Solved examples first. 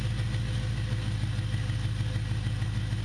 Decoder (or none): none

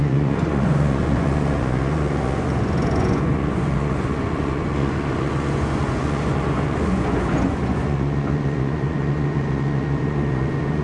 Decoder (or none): vocoder, Vocos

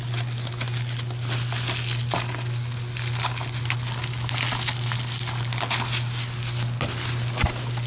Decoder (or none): none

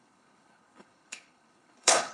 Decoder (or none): codec, HILCodec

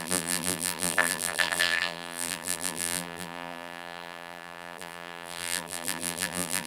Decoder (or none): vocoder, BigVGAN v2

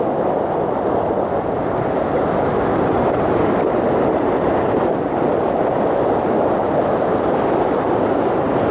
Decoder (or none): none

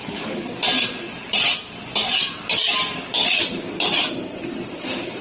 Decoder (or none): none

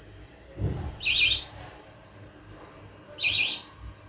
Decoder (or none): none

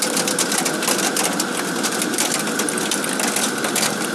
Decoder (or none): none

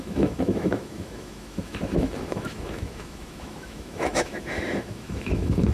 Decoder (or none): autoencoder, DAC-VAE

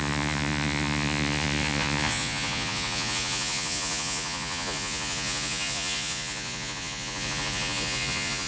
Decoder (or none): vocoder, Vocos